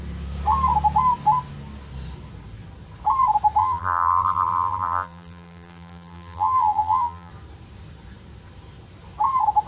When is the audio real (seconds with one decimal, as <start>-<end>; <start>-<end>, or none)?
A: 0.0-3.6; 7.3-9.7